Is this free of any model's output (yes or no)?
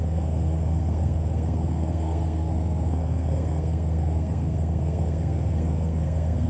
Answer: no